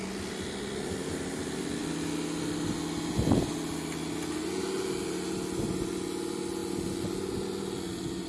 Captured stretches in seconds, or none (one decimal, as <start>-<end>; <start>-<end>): 0.0-8.3